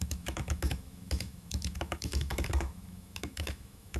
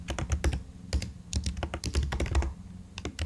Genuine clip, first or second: second